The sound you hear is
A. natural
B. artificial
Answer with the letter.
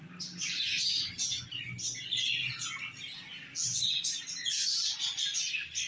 A